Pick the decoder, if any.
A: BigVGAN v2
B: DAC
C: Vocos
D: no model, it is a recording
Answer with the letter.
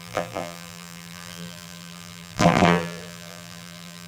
A